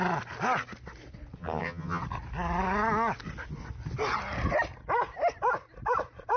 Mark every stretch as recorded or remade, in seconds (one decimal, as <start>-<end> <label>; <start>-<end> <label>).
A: 0.0-1.4 recorded; 1.4-2.0 remade; 2.0-6.4 recorded